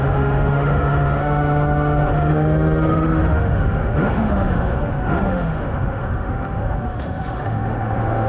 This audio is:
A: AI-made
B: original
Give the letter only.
A